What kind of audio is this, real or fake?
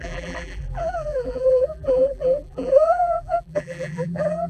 fake